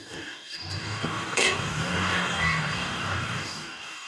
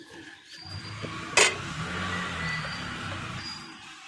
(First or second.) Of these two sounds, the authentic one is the second